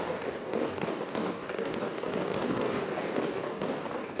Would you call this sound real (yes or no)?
no